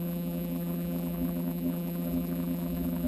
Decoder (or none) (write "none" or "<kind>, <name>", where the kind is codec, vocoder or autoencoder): vocoder, BigVGAN v2